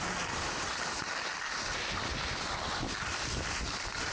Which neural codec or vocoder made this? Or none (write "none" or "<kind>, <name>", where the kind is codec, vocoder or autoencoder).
none